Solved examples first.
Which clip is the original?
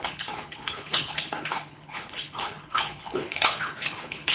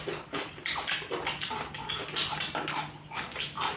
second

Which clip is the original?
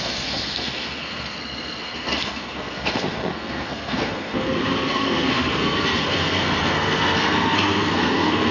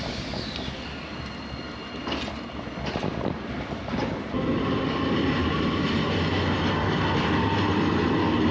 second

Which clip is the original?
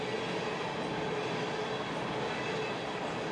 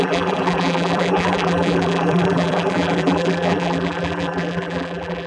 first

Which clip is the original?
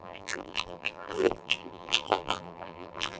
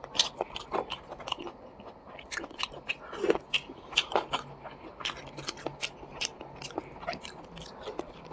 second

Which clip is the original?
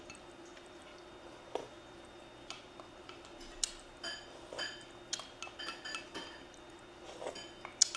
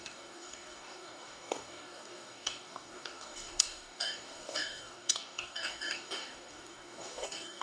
first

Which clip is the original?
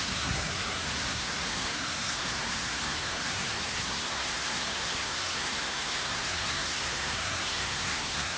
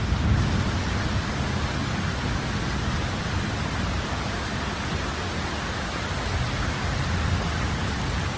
second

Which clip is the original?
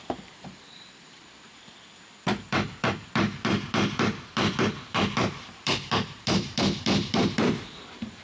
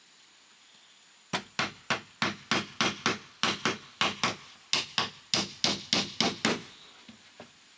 second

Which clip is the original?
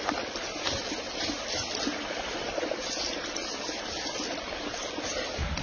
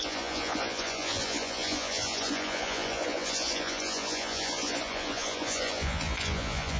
first